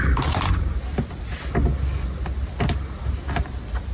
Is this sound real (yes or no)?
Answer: yes